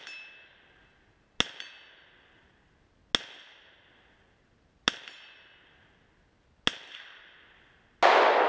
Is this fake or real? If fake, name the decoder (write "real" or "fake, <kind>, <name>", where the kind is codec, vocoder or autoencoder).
real